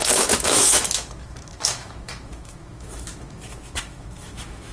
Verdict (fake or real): fake